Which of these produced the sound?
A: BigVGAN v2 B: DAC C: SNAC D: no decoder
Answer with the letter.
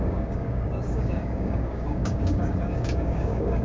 B